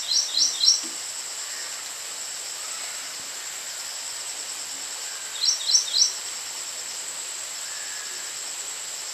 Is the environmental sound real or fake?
real